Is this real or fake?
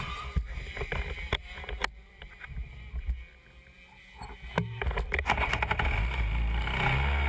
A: real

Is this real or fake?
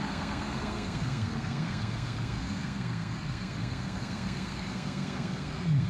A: fake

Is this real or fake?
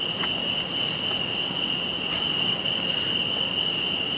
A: real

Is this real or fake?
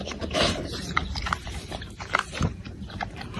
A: fake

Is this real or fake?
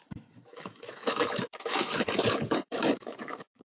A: fake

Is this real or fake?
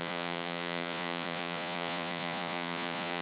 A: fake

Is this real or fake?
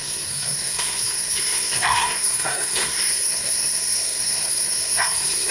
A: fake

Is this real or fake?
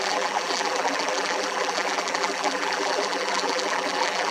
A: fake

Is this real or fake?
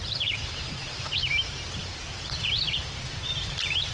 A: fake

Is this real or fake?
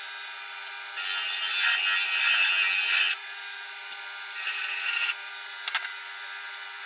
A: real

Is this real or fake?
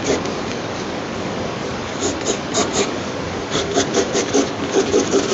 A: fake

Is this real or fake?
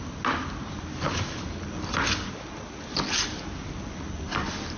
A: real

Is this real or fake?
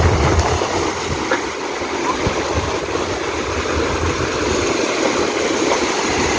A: real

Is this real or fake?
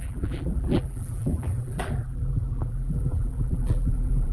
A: fake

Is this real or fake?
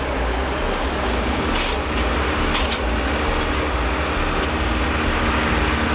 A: real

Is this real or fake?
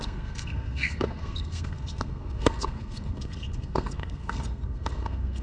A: fake